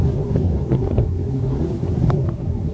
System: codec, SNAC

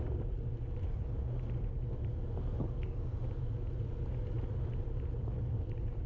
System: none